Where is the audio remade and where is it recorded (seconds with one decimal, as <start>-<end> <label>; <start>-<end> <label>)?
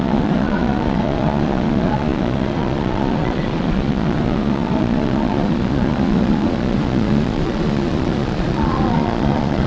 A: 0.0-9.7 remade